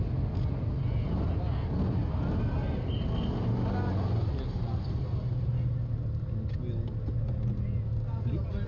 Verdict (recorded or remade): recorded